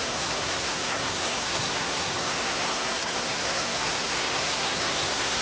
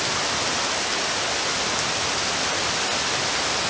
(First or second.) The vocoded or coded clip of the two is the first